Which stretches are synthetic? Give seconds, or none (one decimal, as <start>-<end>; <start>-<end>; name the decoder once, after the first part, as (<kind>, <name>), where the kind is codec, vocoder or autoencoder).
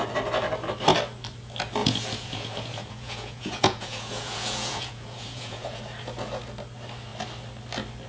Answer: 1.8-5.8 (vocoder, Vocos)